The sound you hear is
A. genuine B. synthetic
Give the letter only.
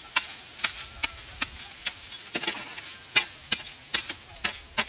A